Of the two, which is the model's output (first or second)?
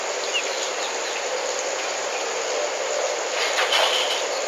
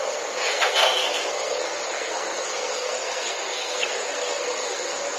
second